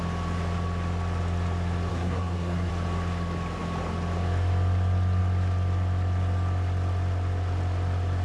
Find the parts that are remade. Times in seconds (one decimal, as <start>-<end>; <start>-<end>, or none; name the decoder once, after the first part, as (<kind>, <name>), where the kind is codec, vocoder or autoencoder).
1.9-2.7 (codec, SNAC)